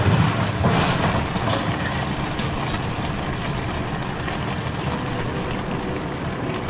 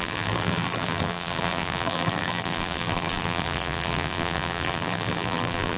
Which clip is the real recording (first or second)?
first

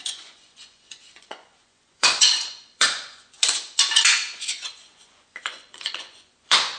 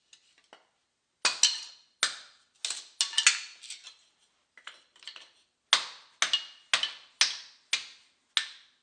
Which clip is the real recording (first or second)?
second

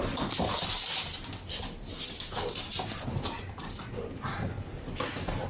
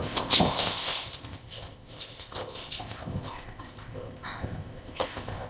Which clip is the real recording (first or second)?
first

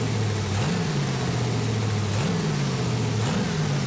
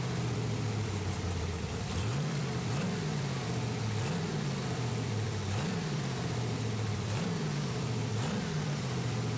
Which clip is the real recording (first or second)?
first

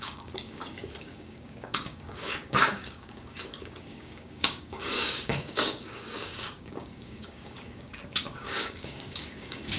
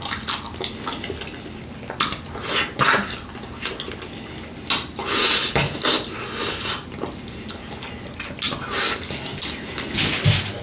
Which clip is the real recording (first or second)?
second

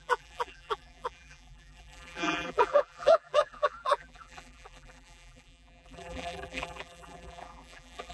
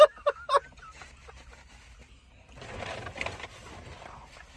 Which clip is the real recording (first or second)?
second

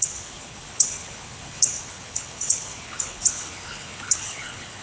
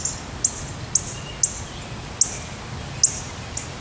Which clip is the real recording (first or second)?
second